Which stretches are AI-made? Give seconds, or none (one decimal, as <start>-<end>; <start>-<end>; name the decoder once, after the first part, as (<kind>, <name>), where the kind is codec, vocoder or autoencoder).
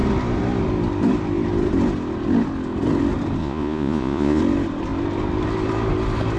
3.4-4.4 (vocoder, Vocos)